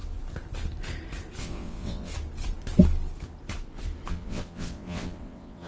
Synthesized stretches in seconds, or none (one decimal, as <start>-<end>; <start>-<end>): 1.4-2.1; 4.1-5.7